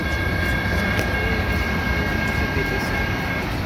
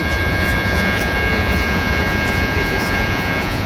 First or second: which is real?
first